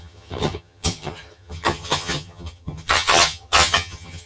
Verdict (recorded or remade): remade